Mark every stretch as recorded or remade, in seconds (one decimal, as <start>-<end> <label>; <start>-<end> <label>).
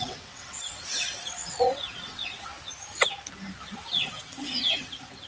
0.0-2.5 remade; 2.5-3.9 recorded; 3.9-5.3 remade